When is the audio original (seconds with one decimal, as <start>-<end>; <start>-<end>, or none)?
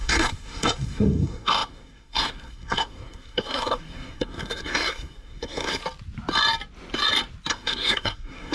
5.8-7.5